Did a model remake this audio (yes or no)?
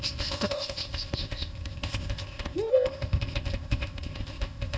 yes